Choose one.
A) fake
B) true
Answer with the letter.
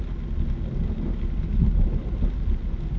B